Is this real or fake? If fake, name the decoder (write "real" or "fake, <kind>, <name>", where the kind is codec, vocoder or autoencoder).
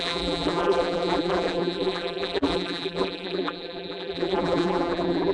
fake, vocoder, BigVGAN v2